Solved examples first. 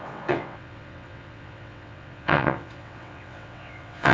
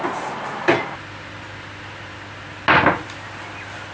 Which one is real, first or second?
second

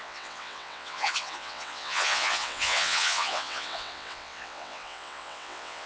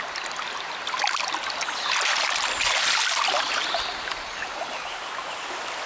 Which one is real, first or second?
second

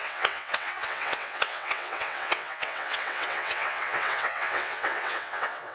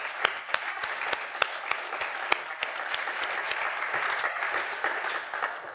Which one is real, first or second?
second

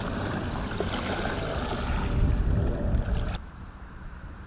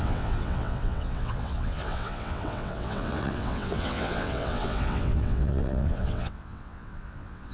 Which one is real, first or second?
first